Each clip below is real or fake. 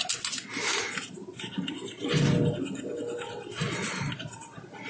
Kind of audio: real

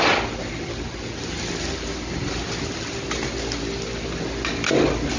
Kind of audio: real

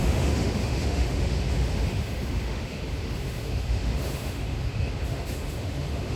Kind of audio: fake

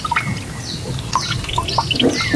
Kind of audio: real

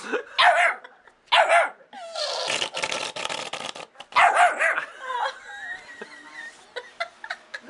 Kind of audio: real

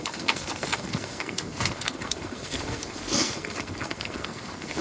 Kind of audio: fake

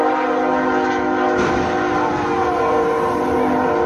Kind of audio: real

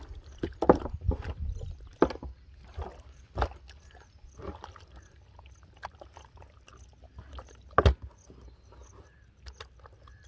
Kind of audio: real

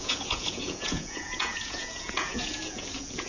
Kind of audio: fake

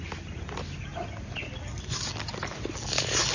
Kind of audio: real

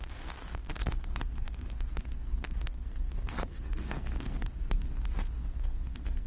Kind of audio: fake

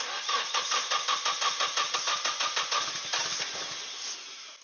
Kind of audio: real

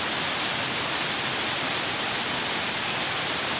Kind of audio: real